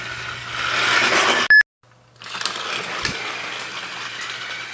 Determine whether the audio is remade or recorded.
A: recorded